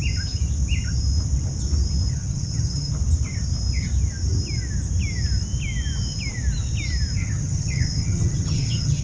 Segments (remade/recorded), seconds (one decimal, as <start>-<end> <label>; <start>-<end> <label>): 0.0-2.1 recorded; 2.1-2.9 remade; 2.9-7.2 recorded; 7.2-9.0 remade